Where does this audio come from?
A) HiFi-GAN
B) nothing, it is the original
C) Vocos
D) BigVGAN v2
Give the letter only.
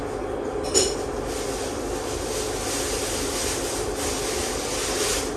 B